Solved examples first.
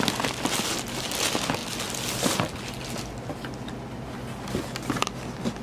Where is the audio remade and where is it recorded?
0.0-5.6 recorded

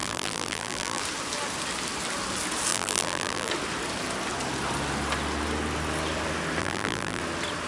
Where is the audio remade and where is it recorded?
0.0-1.0 remade; 1.0-2.7 recorded; 2.7-3.5 remade; 3.5-6.6 recorded; 6.6-7.2 remade; 7.2-7.7 recorded

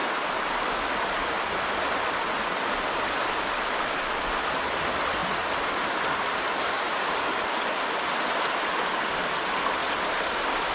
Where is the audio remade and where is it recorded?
0.0-10.7 recorded

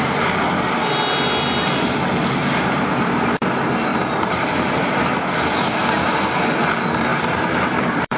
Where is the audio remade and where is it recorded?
0.0-2.4 recorded; 2.4-3.5 remade; 3.5-3.9 recorded; 3.9-5.1 remade; 5.1-7.1 recorded; 7.1-8.2 remade

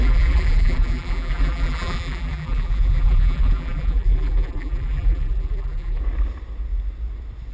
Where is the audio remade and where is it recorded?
0.0-6.0 remade; 6.0-7.5 recorded

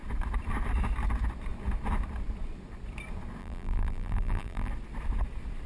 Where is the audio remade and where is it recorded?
0.0-3.4 recorded; 3.4-4.7 remade; 4.7-5.7 recorded

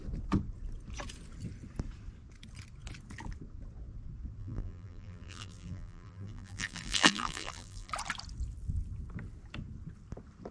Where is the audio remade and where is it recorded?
0.0-4.4 recorded; 4.4-7.9 remade; 7.9-10.5 recorded